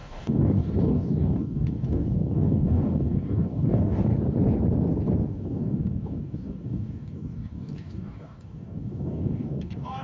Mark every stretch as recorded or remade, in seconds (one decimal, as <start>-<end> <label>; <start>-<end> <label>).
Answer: 0.0-4.1 remade; 4.1-5.3 recorded; 5.3-10.0 remade